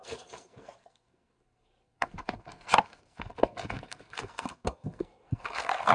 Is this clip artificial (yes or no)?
yes